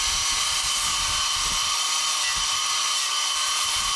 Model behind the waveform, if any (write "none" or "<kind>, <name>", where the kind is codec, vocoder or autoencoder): none